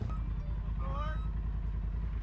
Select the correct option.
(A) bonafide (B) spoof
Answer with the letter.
A